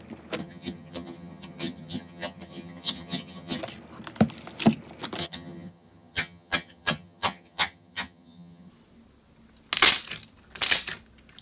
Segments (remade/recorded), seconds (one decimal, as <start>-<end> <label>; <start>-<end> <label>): 0.0-0.4 recorded; 0.4-3.6 remade; 3.6-5.2 recorded; 5.2-8.7 remade; 8.7-11.4 recorded